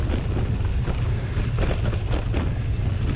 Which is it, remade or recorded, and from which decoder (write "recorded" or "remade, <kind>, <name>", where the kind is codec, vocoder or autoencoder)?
recorded